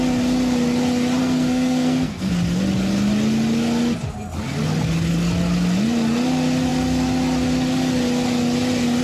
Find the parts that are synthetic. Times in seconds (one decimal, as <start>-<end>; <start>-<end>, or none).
1.2-2.3